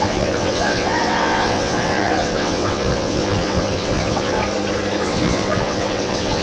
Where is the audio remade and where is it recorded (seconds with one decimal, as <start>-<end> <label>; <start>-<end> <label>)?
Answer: 0.0-4.4 remade; 4.4-5.0 recorded; 5.0-6.4 remade